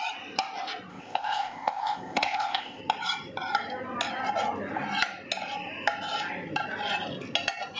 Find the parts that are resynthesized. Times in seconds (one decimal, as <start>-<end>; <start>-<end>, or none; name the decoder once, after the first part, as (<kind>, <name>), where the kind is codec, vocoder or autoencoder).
0.9-2.8 (codec, ZipCodec)